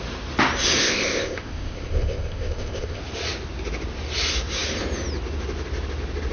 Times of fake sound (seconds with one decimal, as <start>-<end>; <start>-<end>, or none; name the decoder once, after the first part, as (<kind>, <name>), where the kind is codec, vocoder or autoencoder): 0.8-3.0 (codec, ZipCodec)